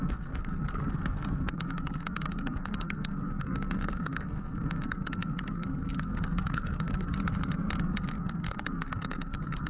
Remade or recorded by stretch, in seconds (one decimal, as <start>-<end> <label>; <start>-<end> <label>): 0.0-7.2 remade; 7.2-7.8 recorded; 7.8-9.7 remade